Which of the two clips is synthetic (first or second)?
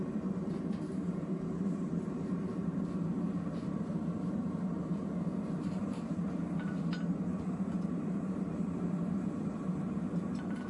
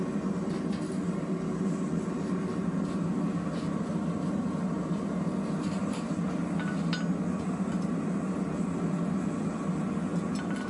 first